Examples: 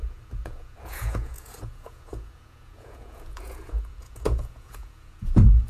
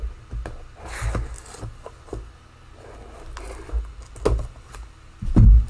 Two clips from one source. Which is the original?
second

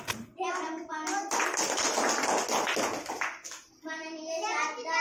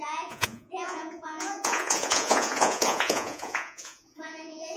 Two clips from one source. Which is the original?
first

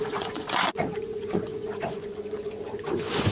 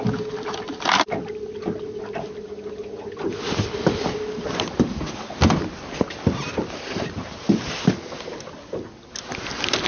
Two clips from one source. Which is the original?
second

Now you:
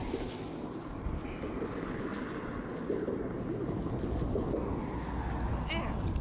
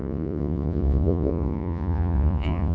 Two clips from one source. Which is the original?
first